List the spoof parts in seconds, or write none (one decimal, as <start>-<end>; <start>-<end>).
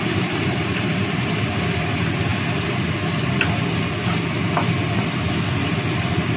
0.4-1.5